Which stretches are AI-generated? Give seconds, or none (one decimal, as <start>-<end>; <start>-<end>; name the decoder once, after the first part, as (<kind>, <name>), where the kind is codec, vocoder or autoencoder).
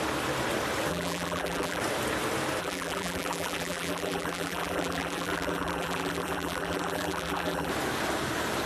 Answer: 0.9-1.8 (vocoder, BigVGAN v2); 2.6-7.7